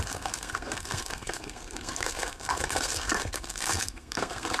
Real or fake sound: fake